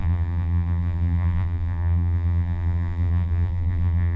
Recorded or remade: remade